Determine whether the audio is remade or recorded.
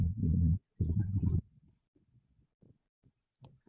remade